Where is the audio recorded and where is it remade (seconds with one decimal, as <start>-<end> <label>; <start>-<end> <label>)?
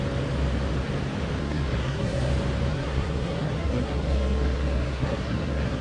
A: 0.0-1.4 recorded; 1.4-2.3 remade; 2.3-2.7 recorded; 2.7-5.8 remade